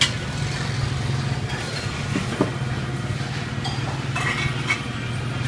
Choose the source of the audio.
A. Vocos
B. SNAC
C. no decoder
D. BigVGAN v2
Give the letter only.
C